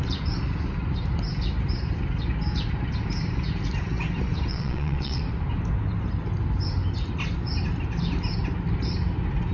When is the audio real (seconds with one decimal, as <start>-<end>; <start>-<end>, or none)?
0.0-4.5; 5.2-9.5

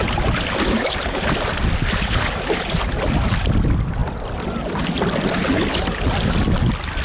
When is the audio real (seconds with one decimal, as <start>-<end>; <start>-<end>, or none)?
0.0-7.0

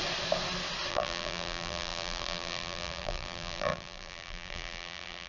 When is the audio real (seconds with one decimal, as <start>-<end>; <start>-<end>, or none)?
0.0-0.9